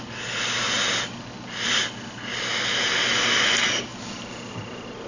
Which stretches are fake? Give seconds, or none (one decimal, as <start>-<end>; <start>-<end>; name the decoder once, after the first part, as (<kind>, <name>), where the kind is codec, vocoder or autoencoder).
none